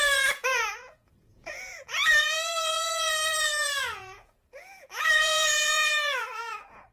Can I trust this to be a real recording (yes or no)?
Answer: no